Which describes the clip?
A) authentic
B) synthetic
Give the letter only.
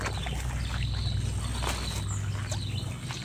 A